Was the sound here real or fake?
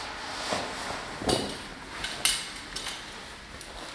real